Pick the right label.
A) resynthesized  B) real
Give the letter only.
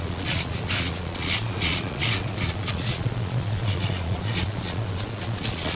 A